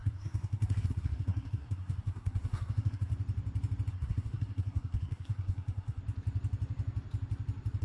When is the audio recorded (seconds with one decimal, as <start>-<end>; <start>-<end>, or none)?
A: 3.1-3.9; 6.0-7.8